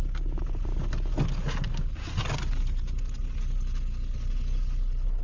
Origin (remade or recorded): recorded